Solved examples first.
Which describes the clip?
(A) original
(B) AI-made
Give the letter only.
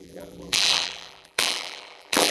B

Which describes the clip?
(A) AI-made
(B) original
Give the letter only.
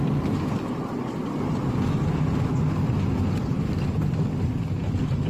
B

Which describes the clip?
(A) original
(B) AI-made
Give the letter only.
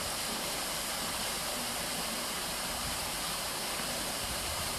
B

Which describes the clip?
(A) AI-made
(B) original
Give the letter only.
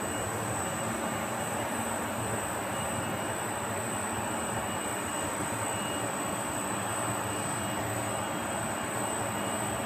B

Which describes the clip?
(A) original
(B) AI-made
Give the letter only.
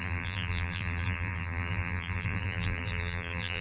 B